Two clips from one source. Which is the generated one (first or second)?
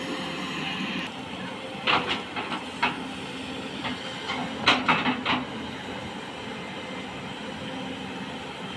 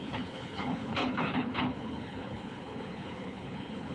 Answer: second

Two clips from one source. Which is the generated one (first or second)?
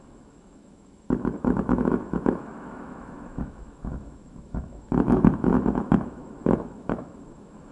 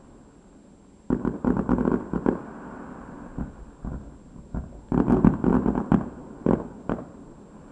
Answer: first